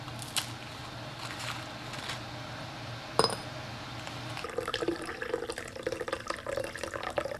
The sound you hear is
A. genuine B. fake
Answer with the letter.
A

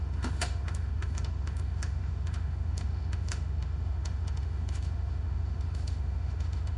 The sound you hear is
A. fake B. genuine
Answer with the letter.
A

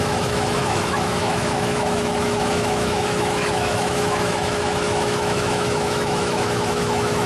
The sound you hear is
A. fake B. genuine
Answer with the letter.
A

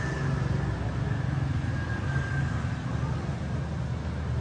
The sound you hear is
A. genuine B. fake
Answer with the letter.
A